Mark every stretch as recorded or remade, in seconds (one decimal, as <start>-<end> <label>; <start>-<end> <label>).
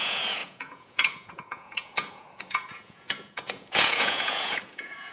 0.0-5.1 remade